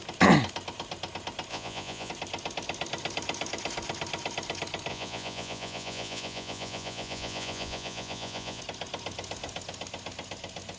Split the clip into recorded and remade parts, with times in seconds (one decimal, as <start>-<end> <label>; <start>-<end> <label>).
0.0-1.5 recorded; 1.5-2.1 remade; 2.1-4.9 recorded; 4.9-8.6 remade; 8.6-10.8 recorded